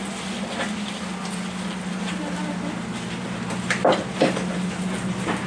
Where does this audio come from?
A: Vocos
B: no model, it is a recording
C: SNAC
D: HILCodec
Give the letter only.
B